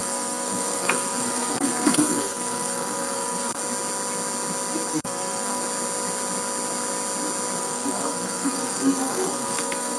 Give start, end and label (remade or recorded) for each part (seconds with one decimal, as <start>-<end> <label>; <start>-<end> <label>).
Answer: 0.0-3.6 remade; 3.6-4.9 recorded; 4.9-5.6 remade; 5.6-7.6 recorded; 7.6-10.0 remade